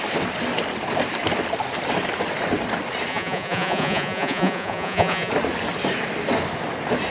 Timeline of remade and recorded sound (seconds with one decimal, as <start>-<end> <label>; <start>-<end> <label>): 0.0-3.1 recorded; 3.1-5.3 remade; 5.3-7.1 recorded